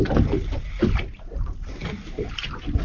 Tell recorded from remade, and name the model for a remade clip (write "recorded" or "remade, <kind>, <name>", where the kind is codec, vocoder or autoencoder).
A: recorded